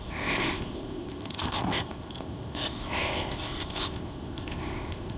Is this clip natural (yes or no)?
no